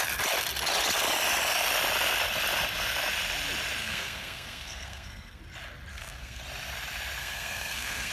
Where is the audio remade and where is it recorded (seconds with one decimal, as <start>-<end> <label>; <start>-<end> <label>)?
0.0-3.8 recorded; 3.8-5.4 remade; 5.4-5.9 recorded; 5.9-6.4 remade; 6.4-7.2 recorded; 7.2-8.1 remade